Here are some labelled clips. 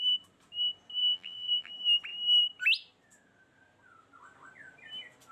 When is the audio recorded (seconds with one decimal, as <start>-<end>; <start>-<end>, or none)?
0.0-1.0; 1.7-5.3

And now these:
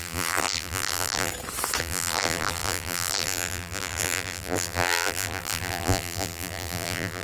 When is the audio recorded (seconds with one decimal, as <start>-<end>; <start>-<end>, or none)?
1.3-1.8

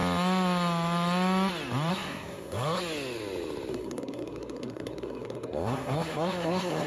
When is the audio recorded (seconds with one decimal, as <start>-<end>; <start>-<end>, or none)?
0.0-1.9; 2.8-3.7

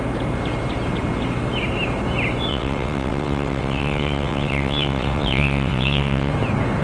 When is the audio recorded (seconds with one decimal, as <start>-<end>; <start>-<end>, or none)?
0.0-2.5; 6.3-6.8

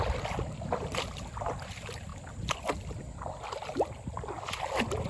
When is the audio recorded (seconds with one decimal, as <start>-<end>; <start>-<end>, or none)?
0.0-5.1